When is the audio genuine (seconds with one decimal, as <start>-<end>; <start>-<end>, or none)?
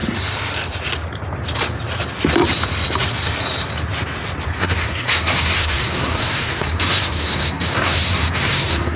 0.0-4.6